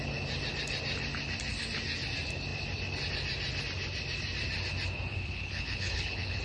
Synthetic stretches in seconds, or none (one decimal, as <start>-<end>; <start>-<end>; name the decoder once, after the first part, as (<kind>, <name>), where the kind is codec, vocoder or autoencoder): 5.1-6.4 (codec, HILCodec)